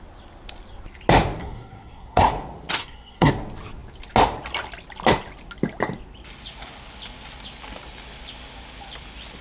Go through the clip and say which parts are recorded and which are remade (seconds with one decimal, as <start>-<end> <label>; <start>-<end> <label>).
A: 0.0-1.4 recorded; 1.4-2.3 remade; 2.3-2.8 recorded; 2.8-3.3 remade; 3.3-9.4 recorded